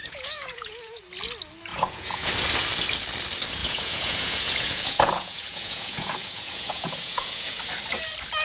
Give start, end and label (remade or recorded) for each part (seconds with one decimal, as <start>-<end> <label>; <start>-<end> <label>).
0.0-1.0 remade; 1.0-1.7 recorded; 1.7-2.3 remade; 2.3-3.6 recorded; 3.6-7.6 remade; 7.6-8.4 recorded